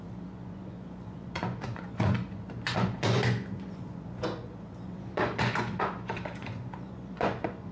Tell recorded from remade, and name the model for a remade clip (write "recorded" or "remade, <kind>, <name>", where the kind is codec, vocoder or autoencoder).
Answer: remade, vocoder, Vocos